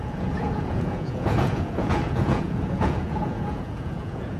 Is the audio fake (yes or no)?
yes